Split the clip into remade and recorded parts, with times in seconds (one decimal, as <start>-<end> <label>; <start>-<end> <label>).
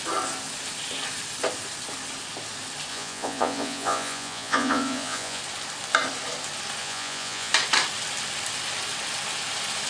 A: 0.0-2.9 recorded; 2.9-5.4 remade; 5.4-6.8 recorded; 6.8-7.5 remade; 7.5-9.9 recorded